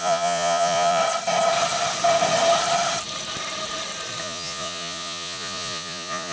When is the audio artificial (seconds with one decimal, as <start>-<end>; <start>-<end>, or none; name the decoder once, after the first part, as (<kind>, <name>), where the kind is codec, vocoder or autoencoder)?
0.0-1.0 (vocoder, Vocos); 4.2-6.3